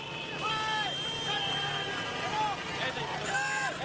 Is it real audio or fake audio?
real